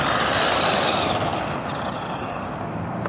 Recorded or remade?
recorded